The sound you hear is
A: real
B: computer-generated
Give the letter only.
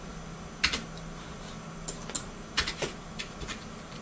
A